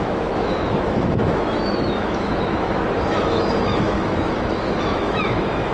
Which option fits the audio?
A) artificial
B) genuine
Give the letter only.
A